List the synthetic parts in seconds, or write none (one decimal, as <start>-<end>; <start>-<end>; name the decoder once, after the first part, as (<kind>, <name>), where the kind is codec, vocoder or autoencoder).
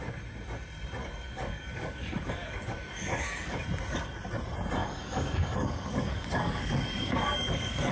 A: 1.0-3.6 (codec, DAC); 4.8-7.9